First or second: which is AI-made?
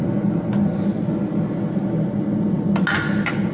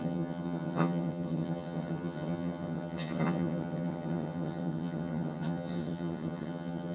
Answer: second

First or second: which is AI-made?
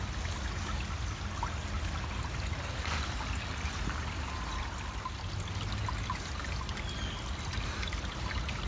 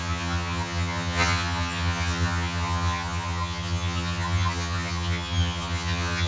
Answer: second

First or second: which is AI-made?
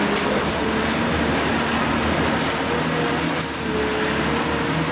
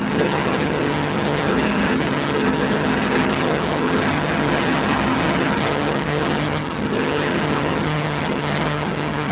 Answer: second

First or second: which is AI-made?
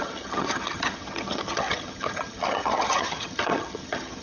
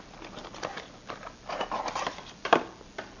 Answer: first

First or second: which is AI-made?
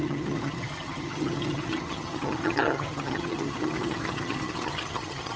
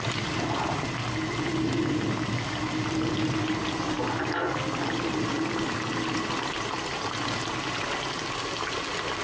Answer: first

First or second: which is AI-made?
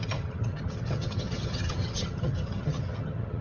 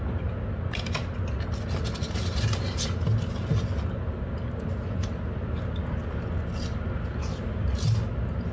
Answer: first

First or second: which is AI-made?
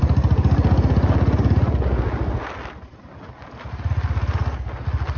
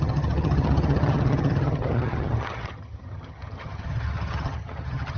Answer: second